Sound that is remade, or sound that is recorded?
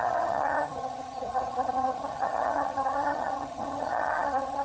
remade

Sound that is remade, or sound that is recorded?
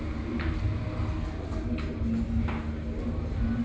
recorded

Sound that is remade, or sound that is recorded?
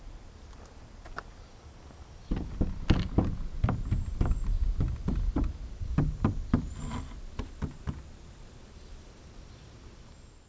recorded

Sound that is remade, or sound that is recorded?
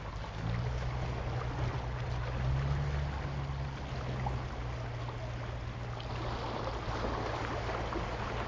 recorded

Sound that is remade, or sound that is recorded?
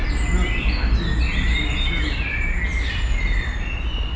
recorded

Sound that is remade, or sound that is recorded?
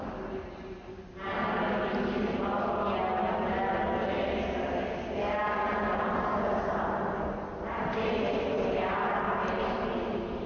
recorded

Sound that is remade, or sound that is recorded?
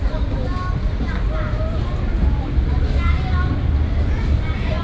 recorded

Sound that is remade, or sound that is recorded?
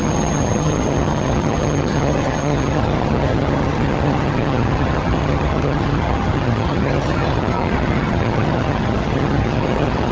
remade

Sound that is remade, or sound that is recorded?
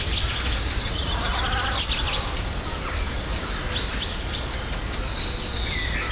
recorded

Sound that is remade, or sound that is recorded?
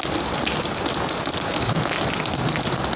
recorded